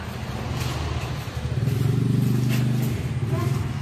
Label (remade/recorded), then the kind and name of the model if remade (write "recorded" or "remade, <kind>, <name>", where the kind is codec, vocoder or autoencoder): recorded